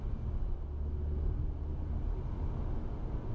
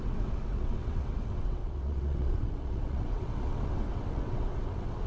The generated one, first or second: second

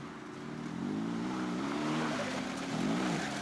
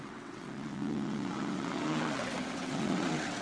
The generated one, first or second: second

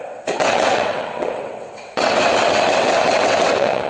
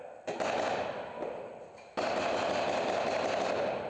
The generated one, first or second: first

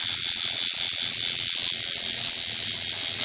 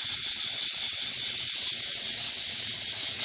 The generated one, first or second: second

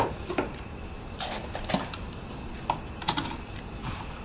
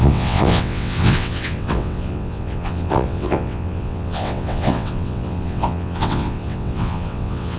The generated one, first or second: second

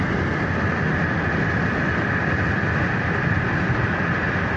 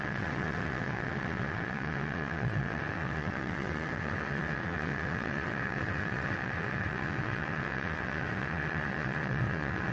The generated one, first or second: second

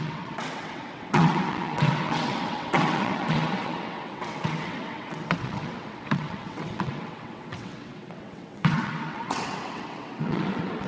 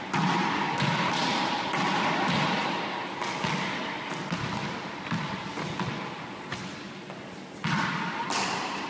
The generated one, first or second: first